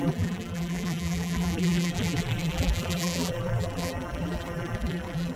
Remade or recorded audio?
remade